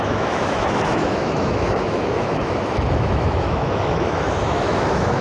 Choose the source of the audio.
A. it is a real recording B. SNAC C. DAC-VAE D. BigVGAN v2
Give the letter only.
C